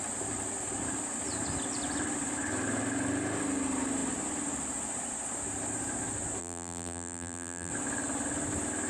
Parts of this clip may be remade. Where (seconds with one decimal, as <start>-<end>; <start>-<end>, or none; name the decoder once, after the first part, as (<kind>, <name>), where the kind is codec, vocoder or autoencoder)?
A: 6.4-7.7 (vocoder, BigVGAN v2)